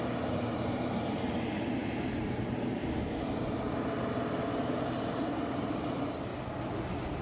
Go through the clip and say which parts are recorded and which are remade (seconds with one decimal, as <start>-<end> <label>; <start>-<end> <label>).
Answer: 0.0-2.8 remade; 2.8-4.3 recorded; 4.3-6.3 remade; 6.3-7.2 recorded